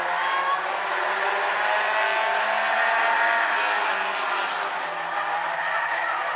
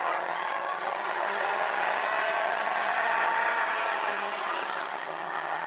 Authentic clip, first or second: first